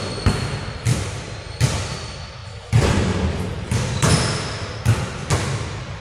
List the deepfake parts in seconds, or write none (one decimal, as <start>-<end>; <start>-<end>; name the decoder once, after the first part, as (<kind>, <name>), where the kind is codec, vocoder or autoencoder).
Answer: 0.9-1.6 (vocoder, BigVGAN v2); 2.4-4.1